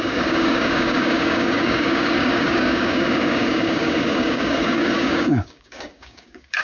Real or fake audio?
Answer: fake